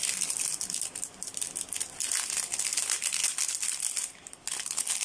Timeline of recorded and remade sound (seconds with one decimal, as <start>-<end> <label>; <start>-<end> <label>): 0.0-5.0 recorded